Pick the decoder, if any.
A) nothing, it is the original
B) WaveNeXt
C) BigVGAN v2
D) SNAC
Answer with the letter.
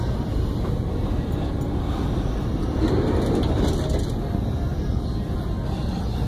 A